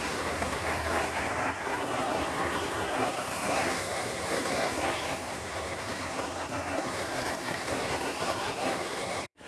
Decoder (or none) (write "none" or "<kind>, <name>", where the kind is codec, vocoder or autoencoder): codec, SNAC